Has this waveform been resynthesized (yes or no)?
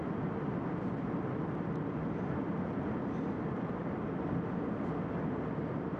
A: yes